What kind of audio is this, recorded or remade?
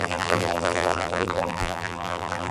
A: remade